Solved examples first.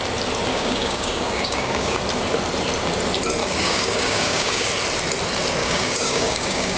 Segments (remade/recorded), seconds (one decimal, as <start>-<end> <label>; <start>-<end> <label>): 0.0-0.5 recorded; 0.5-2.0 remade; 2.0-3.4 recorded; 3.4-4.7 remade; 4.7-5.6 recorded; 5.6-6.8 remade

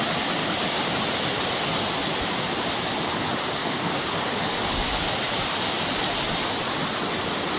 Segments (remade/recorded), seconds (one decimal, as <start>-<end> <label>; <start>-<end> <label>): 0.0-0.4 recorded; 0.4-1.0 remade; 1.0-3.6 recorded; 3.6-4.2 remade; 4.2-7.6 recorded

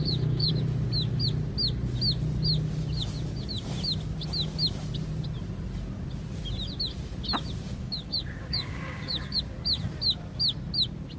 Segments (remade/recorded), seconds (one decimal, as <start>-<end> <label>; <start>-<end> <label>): 0.0-0.5 remade; 0.5-7.8 recorded; 7.8-9.4 remade; 9.4-11.2 recorded

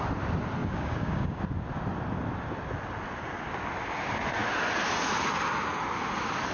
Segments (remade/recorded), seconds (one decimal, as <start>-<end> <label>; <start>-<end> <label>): 0.0-0.6 recorded; 0.6-1.4 remade; 1.4-6.5 recorded

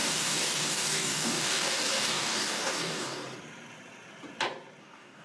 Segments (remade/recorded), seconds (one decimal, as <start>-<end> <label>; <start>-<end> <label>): 0.0-3.2 remade; 3.2-4.8 recorded; 4.8-5.2 remade